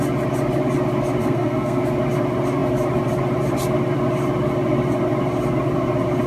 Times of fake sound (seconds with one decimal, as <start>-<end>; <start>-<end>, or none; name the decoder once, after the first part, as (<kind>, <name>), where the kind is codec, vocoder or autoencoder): 1.2-1.8 (codec, SNAC)